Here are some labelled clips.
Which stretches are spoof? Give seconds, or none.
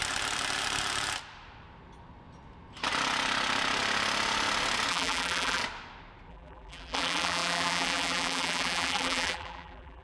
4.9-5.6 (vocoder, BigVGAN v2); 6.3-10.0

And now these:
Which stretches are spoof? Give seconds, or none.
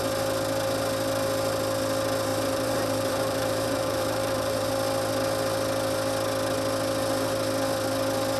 2.3-4.7 (vocoder, BigVGAN v2)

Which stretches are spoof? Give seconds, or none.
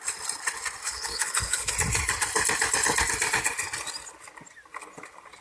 0.8-1.7 (codec, HILCodec)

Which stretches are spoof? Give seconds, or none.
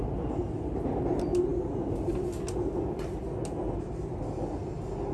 none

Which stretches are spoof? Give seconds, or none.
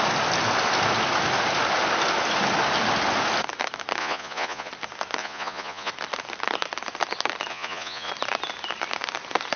4.0-4.7 (vocoder, Vocos); 5.2-5.9; 7.5-8.1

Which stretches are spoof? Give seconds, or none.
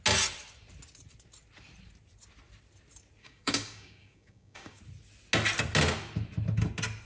3.2-4.8 (codec, DAC)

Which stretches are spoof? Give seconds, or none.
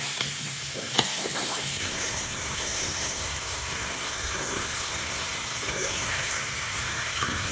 0.0-7.5 (codec, SNAC)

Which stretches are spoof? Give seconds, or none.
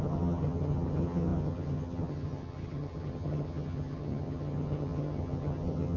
0.0-6.0 (vocoder, HiFi-GAN)